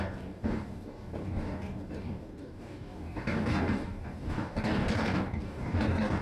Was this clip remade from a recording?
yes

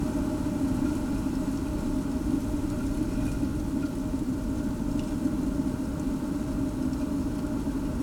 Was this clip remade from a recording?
no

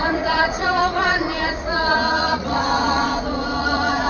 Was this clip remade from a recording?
yes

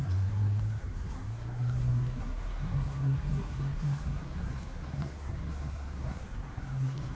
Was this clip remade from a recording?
yes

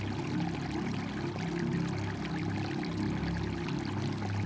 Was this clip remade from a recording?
no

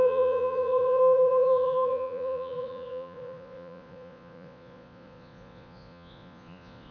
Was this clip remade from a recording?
yes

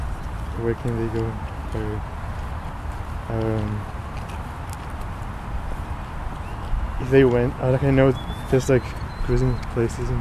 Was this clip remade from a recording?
no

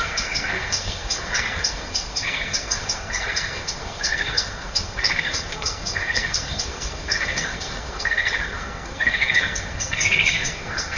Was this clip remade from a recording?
yes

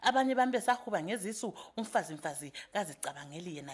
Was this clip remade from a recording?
no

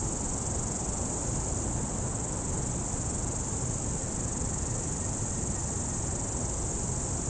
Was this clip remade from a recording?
no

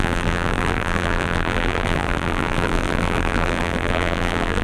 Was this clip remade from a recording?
yes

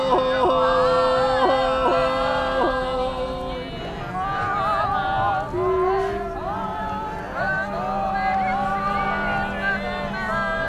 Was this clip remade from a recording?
no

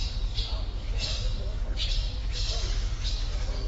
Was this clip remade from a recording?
yes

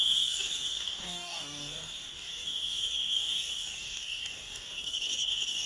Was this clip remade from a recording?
yes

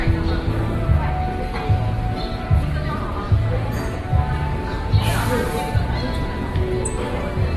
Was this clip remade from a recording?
no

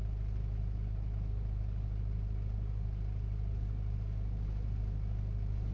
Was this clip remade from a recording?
no